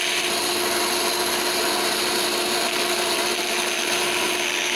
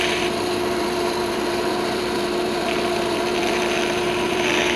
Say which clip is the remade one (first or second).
second